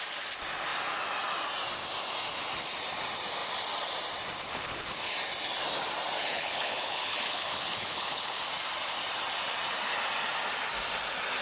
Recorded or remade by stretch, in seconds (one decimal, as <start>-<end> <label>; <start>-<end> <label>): 0.0-4.5 recorded; 4.5-5.1 remade; 5.1-6.2 recorded; 6.2-8.4 remade; 8.4-11.4 recorded